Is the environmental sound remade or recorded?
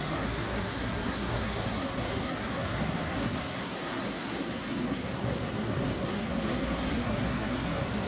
remade